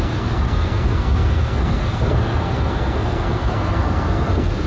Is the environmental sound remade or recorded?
remade